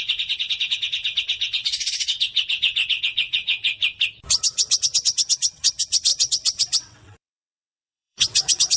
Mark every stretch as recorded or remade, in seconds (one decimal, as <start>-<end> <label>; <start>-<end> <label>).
0.0-3.8 remade; 3.8-4.4 recorded; 4.4-8.8 remade